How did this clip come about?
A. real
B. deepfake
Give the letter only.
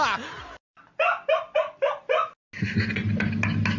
A